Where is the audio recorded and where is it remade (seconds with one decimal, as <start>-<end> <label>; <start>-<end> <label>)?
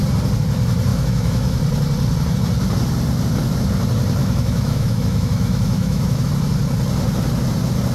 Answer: 0.0-0.9 recorded; 0.9-1.6 remade; 1.6-4.2 recorded; 4.2-6.3 remade; 6.3-7.9 recorded